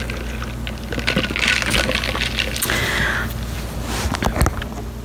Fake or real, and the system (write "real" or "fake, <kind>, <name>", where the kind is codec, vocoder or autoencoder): real